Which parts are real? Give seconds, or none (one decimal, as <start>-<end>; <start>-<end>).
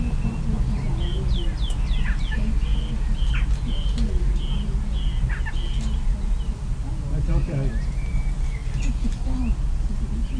0.0-10.4